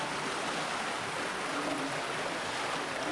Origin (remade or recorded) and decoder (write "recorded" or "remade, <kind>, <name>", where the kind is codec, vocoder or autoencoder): recorded